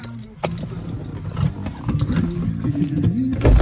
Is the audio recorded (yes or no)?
yes